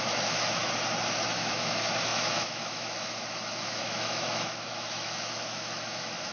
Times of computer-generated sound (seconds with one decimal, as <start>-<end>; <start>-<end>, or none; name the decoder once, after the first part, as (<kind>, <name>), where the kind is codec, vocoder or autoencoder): 0.0-0.6 (autoencoder, DAC-VAE); 1.1-6.3